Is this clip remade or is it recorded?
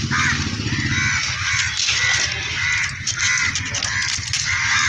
recorded